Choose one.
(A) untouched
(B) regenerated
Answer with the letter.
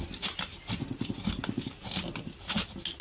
A